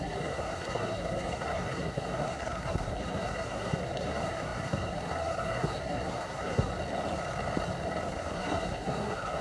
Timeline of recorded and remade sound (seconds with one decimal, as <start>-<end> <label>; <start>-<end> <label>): 0.0-6.7 remade; 6.7-8.1 recorded; 8.1-9.4 remade